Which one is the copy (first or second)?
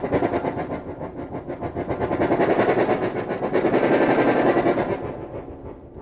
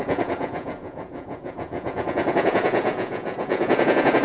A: second